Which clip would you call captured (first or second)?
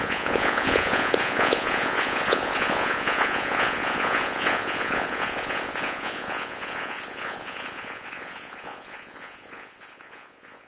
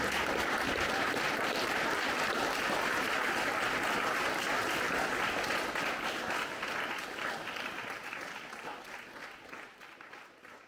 second